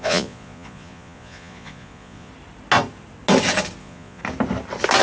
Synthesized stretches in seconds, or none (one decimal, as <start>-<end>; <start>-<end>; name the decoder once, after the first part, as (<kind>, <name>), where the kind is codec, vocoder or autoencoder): 0.0-2.3 (vocoder, Vocos); 3.8-4.2